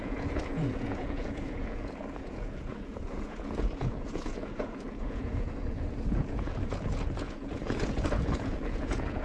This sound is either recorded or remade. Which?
remade